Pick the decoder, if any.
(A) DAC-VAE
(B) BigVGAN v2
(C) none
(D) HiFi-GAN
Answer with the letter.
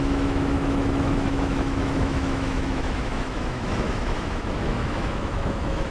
A